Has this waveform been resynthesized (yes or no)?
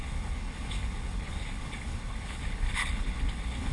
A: yes